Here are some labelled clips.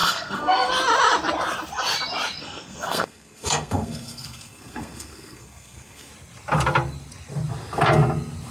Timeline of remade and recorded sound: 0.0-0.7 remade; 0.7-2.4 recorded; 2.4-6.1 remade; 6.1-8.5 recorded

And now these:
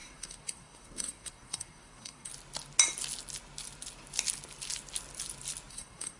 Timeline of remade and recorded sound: 0.0-2.3 remade; 2.3-5.7 recorded; 5.7-6.2 remade

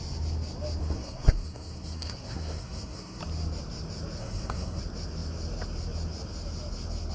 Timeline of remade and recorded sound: 0.0-0.8 recorded; 0.8-3.2 remade; 3.2-4.2 recorded; 4.2-4.8 remade; 4.8-7.1 recorded

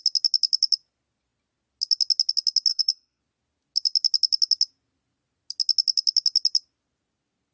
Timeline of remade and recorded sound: 0.0-2.7 recorded; 2.7-3.2 remade; 3.2-7.5 recorded

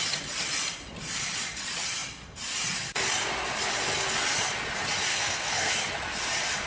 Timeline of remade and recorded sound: 0.0-5.1 recorded; 5.1-5.7 remade; 5.7-6.7 recorded

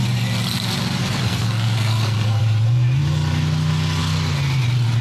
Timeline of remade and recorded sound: 0.0-1.0 recorded; 1.0-2.4 remade; 2.4-5.0 recorded